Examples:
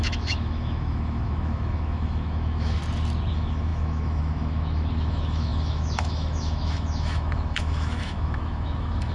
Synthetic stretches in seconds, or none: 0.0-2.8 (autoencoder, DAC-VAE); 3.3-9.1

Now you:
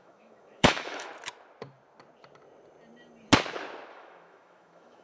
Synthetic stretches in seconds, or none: 0.0-1.1 (autoencoder, DAC-VAE); 3.9-5.0

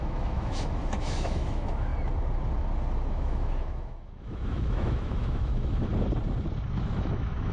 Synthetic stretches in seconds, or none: 0.0-1.9 (autoencoder, DAC-VAE); 3.1-5.9; 6.8-7.5

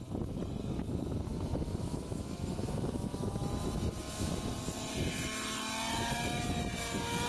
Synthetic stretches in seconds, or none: 1.3-4.5 (autoencoder, DAC-VAE)

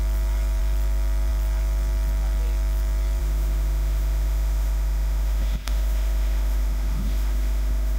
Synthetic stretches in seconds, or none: 3.2-8.0 (autoencoder, DAC-VAE)

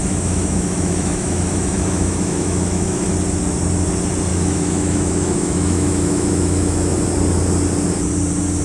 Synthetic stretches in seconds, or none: 0.0-3.1 (autoencoder, DAC-VAE); 4.3-7.0

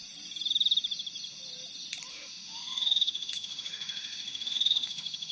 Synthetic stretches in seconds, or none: 2.1-5.3 (autoencoder, DAC-VAE)

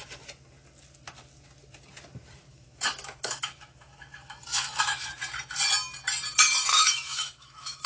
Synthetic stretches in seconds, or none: 2.5-5.2 (autoencoder, DAC-VAE); 6.7-7.9